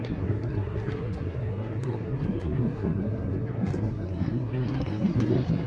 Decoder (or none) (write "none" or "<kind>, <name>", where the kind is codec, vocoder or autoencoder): codec, SNAC